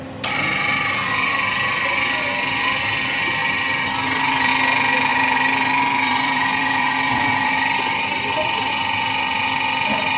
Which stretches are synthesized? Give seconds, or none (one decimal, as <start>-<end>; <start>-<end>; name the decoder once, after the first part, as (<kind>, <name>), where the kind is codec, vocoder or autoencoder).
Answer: 3.4-4.5 (vocoder, BigVGAN v2); 5.1-8.7

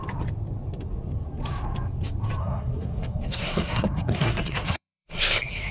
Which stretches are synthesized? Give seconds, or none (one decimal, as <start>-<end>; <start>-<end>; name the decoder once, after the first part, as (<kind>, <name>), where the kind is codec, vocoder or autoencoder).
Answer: 2.4-5.7 (codec, SNAC)

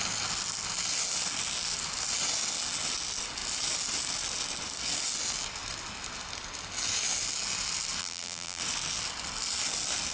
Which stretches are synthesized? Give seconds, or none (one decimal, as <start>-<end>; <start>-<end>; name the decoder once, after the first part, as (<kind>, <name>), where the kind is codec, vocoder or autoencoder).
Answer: 8.0-8.6 (vocoder, BigVGAN v2)

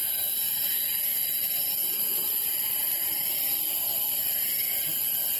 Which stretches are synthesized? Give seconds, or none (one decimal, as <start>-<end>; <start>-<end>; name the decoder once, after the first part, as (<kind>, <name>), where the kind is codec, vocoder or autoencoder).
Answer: none

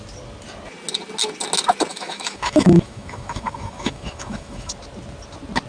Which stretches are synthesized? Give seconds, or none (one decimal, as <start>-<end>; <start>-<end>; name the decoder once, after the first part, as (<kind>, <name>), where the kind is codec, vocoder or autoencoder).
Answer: 1.9-4.7 (autoencoder, DAC-VAE)

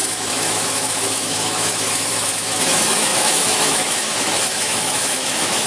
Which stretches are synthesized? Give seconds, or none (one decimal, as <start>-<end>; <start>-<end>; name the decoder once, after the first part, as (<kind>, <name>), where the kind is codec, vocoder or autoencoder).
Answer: 0.0-5.7 (autoencoder, DAC-VAE)

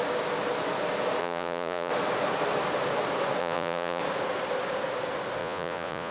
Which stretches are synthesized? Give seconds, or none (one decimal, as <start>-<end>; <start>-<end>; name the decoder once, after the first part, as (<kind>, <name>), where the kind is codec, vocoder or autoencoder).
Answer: 1.2-1.9 (vocoder, Vocos); 3.4-4.0; 5.4-6.1